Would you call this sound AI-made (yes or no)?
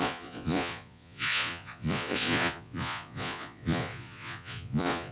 yes